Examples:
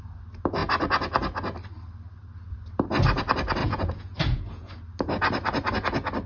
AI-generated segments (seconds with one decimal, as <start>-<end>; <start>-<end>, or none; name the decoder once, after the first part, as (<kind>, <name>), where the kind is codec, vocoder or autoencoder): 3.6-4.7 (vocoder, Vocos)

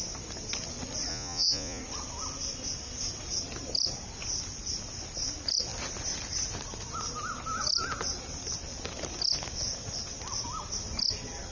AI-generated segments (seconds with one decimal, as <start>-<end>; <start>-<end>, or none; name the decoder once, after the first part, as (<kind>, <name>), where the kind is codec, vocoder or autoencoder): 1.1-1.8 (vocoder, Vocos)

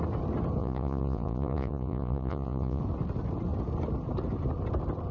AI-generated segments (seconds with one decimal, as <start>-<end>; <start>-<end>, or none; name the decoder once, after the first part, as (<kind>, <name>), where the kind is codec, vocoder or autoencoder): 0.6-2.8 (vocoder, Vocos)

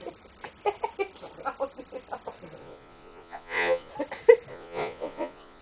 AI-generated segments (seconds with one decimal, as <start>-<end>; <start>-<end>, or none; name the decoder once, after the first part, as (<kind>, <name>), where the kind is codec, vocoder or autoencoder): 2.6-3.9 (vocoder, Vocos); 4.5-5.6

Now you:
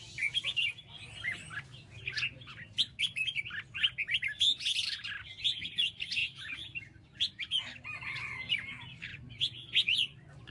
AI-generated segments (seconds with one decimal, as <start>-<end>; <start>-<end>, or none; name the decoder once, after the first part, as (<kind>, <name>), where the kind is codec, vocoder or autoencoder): 9.1-10.5 (vocoder, Vocos)